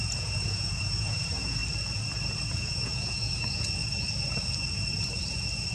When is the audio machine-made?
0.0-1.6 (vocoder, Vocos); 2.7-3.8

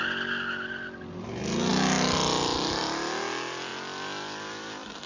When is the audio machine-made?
none

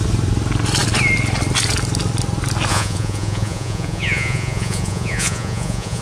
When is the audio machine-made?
2.7-6.0 (vocoder, Vocos)

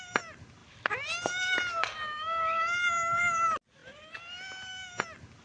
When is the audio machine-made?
none